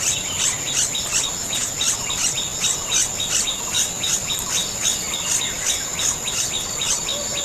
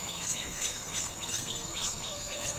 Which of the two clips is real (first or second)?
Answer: first